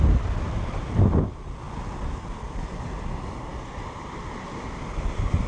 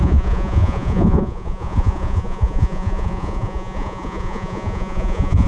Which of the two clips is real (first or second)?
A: first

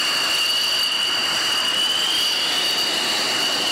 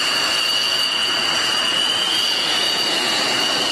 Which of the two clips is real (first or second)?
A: first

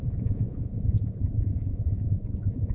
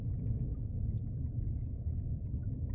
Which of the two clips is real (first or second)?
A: second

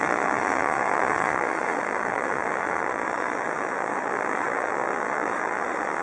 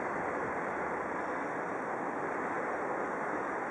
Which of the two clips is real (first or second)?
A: second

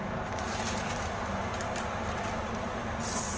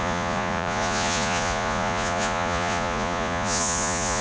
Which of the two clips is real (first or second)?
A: first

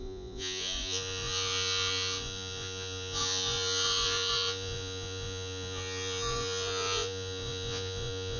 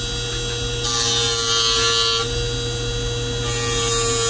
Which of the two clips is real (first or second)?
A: second